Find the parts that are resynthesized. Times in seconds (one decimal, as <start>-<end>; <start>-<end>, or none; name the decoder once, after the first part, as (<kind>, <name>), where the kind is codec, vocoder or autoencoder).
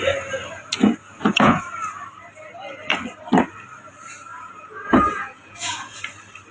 1.0-1.6 (vocoder, Vocos); 4.3-6.0